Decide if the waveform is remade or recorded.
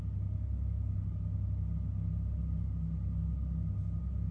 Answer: recorded